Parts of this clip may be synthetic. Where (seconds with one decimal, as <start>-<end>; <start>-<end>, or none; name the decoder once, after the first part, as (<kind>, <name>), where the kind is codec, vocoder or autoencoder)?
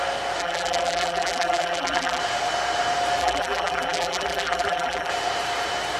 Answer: 0.4-2.2 (vocoder, BigVGAN v2); 3.2-5.1